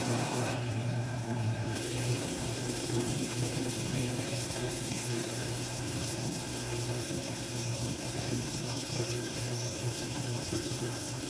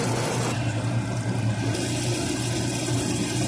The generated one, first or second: first